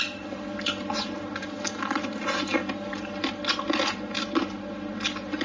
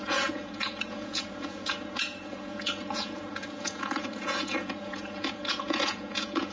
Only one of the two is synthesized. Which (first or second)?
second